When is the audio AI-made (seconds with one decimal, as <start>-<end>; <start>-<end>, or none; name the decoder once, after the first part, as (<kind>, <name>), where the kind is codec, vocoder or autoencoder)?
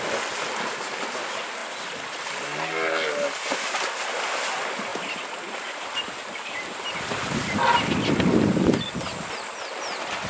none